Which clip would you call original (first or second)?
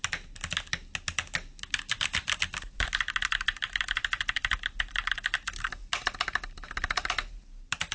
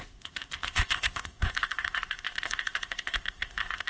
first